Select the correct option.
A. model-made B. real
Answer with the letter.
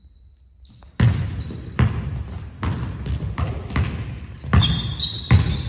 B